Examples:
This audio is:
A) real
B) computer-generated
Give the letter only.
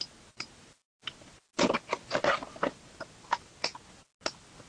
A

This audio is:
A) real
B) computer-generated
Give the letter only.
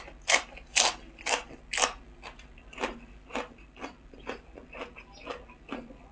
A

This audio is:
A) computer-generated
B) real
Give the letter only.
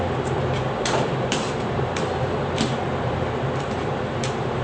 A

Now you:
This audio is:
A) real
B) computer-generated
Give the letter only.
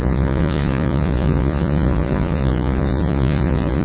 B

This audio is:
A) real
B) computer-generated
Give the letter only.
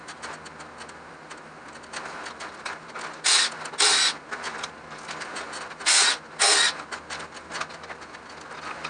A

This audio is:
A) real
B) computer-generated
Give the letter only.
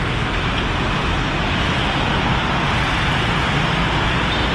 A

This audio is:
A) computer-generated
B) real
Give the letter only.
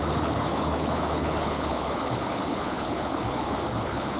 A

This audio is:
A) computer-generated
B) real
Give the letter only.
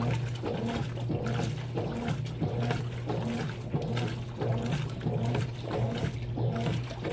B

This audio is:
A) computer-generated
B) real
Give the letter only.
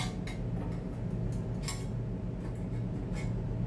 B